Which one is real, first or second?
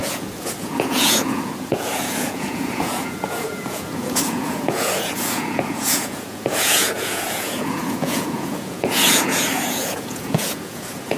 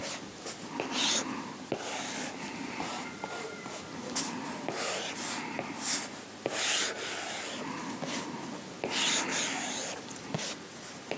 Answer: second